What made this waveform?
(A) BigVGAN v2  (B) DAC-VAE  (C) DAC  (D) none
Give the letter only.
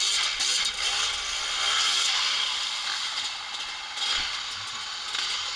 D